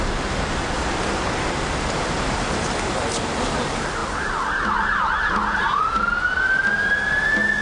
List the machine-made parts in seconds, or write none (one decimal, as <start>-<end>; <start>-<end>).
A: none